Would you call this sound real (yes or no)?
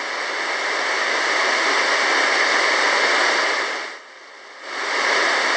yes